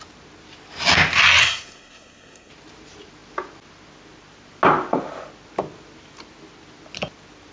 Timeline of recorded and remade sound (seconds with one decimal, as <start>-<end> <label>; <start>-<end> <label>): 0.0-1.4 recorded; 1.4-2.5 remade; 2.5-7.5 recorded